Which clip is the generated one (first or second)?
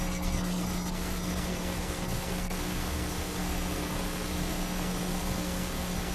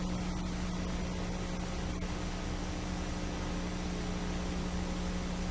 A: first